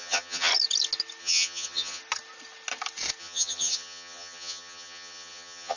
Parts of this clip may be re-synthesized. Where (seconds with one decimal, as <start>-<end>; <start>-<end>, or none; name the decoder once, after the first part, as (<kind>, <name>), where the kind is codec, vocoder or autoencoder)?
0.0-0.5 (vocoder, HiFi-GAN); 1.2-2.0; 3.2-5.8